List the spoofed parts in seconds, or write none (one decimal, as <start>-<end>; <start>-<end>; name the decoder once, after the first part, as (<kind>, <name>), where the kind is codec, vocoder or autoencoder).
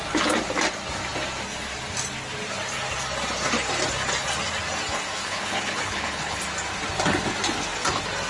5.2-6.4 (codec, HILCodec)